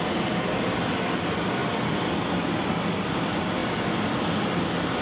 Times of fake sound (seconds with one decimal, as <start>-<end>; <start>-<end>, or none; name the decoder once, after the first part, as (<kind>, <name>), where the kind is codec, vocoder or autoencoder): none